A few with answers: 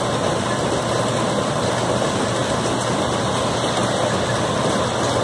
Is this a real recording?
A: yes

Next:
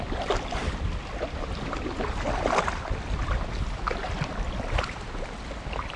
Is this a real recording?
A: yes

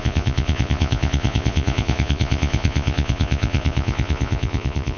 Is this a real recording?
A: no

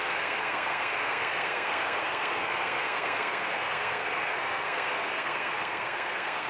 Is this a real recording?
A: no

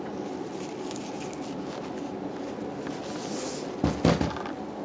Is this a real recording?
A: yes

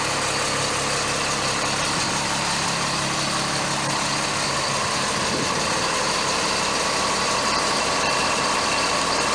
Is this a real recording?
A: yes